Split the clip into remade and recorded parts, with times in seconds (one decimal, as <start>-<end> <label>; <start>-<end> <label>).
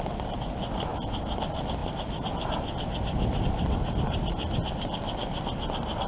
0.0-6.1 recorded